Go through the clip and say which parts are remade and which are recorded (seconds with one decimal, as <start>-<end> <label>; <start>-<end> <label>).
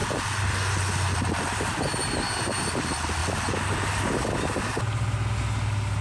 0.0-6.0 recorded